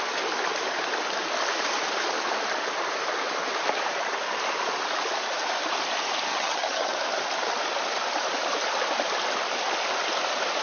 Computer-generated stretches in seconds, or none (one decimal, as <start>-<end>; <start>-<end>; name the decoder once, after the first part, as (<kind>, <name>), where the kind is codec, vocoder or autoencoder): 6.3-6.9 (vocoder, HiFi-GAN)